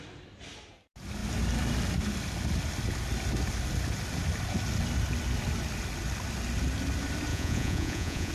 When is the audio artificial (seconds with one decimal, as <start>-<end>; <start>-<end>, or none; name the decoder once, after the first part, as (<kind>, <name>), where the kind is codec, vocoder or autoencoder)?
7.3-8.3 (vocoder, Vocos)